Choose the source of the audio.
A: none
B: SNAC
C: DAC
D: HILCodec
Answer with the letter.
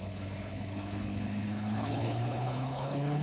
D